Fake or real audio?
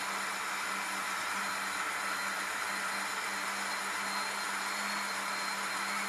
real